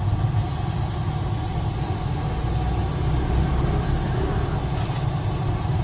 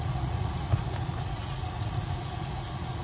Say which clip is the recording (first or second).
first